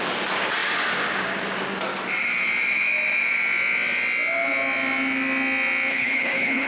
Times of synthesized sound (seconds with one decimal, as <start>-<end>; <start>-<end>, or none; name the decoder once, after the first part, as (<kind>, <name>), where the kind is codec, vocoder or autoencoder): 5.9-6.7 (codec, HILCodec)